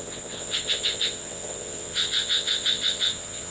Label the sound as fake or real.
fake